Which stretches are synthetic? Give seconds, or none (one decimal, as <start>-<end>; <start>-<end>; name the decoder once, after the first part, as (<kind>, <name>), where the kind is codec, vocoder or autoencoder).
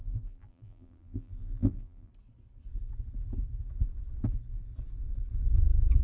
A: 0.0-2.1 (vocoder, BigVGAN v2)